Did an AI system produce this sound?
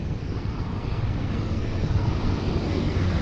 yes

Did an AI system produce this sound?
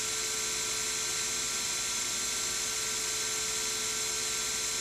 no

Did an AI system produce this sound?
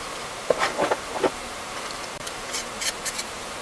yes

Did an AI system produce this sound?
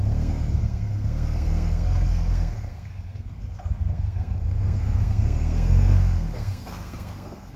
yes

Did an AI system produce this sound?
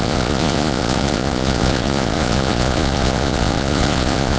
yes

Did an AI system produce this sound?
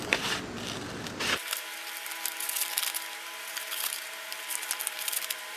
no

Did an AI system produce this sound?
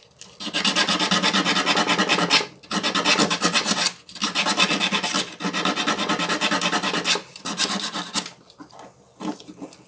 no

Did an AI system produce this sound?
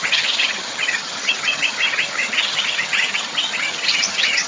yes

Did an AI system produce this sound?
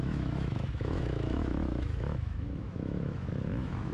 yes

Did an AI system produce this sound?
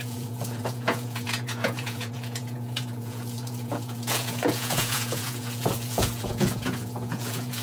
yes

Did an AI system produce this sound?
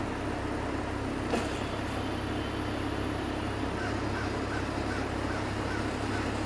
no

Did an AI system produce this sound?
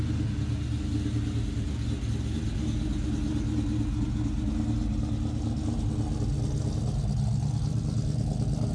no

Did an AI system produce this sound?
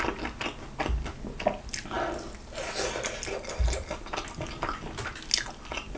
no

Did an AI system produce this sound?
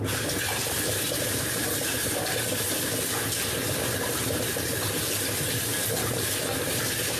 no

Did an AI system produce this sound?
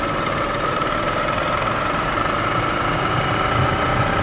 no